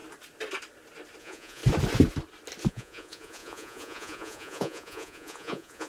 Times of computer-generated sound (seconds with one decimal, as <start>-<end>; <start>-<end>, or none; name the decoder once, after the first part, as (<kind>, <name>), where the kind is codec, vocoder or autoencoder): 1.2-1.6 (vocoder, Vocos); 2.7-5.9